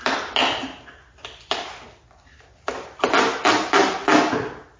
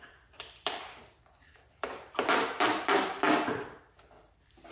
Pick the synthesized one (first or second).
second